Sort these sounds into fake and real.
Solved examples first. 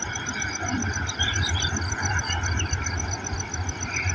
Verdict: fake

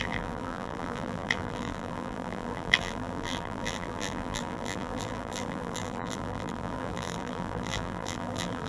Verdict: fake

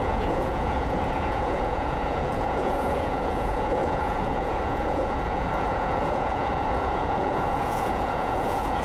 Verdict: fake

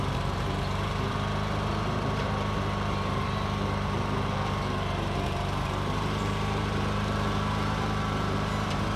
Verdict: fake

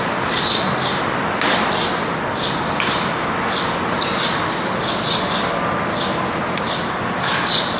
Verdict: real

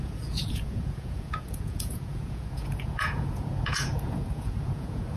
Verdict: fake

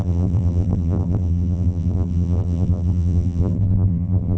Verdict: fake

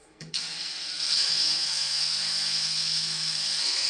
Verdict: fake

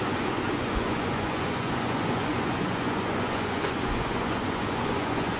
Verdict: fake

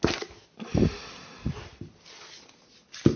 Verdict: real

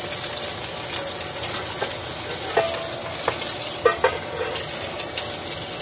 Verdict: real